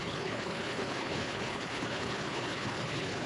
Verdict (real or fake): fake